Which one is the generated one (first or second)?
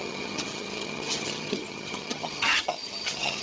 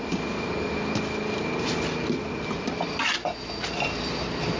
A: first